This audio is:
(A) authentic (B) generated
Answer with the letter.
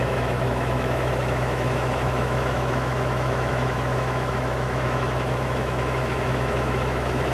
B